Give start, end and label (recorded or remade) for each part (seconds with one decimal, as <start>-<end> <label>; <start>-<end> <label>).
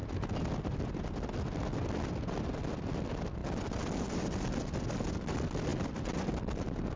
0.0-7.0 recorded